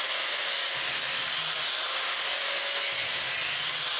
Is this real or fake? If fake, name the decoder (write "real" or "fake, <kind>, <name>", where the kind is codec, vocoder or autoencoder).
real